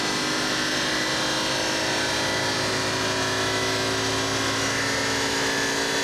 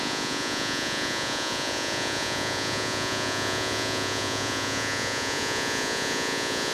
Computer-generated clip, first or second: second